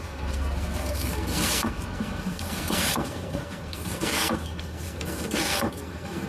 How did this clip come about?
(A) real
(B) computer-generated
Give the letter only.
B